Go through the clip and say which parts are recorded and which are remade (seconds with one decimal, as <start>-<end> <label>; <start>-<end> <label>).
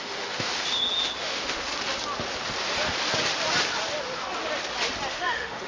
0.0-0.5 remade; 0.5-1.2 recorded; 1.2-1.7 remade; 1.7-5.1 recorded; 5.1-5.7 remade